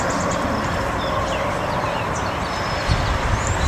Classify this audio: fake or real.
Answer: real